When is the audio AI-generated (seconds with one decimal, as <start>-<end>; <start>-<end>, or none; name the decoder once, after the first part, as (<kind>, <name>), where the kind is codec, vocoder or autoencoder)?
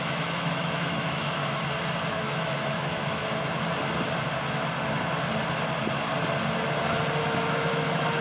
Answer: 0.0-1.4 (autoencoder, DAC-VAE); 2.1-3.2; 7.2-8.2